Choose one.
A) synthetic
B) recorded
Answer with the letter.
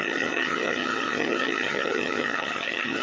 A